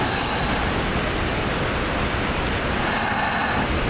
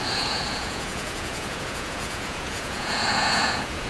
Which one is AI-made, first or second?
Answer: second